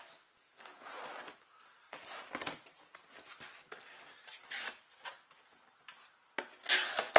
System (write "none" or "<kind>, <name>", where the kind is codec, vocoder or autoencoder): none